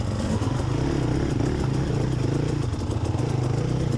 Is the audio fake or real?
real